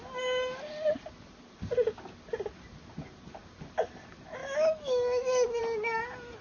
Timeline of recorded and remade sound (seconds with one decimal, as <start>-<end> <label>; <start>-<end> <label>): 0.0-4.4 recorded; 4.4-5.6 remade; 5.6-6.4 recorded